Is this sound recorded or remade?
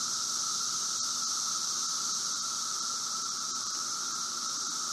remade